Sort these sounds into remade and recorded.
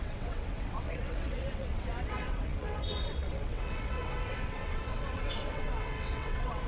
remade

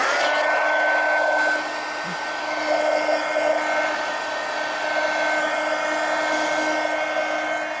recorded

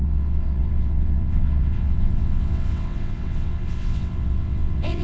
remade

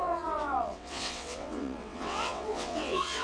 remade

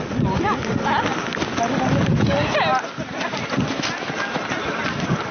recorded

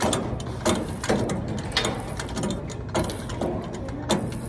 recorded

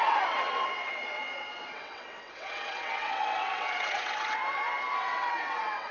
remade